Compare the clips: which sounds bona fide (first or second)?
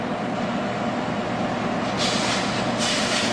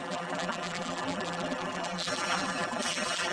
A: first